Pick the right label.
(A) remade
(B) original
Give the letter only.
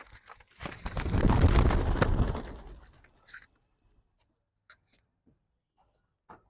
B